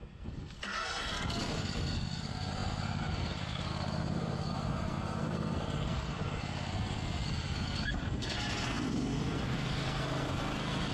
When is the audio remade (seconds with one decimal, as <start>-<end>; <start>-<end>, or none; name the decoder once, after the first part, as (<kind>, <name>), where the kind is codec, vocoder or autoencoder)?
0.0-10.9 (codec, SNAC)